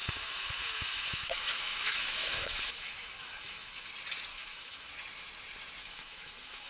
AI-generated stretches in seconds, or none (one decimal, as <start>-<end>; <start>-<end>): 0.0-3.9; 4.3-4.9; 5.8-6.7